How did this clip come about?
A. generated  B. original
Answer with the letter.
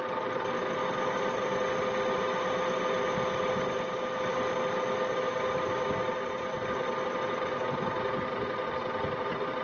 B